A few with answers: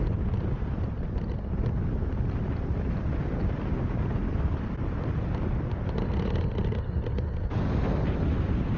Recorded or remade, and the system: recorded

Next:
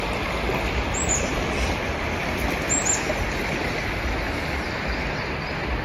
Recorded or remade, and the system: recorded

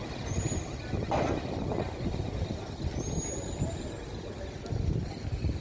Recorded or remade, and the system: recorded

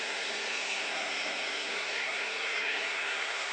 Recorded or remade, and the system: remade, codec, SNAC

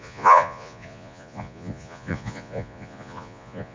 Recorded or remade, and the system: remade, vocoder, Vocos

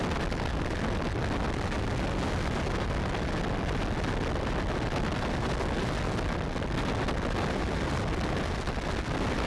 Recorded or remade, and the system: recorded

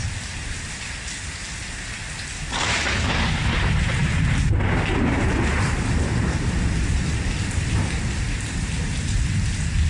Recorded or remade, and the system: recorded